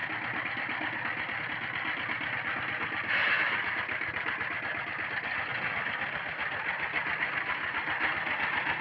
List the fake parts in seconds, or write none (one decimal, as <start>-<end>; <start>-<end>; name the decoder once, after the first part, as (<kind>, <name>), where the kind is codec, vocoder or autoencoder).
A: none